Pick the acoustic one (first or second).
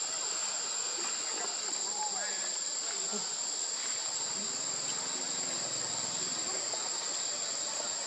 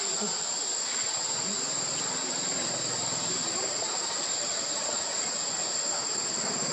first